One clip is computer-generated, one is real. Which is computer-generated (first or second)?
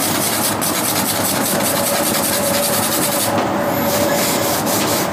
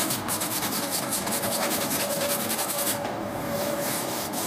second